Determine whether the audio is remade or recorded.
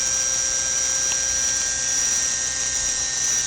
recorded